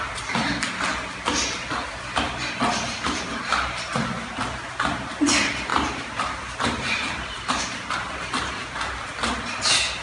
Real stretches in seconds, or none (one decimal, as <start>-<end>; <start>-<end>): 0.0-5.7; 7.6-10.0